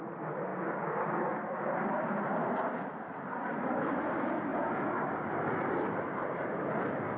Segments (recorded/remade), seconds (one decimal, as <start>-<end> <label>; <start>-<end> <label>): 0.0-7.2 recorded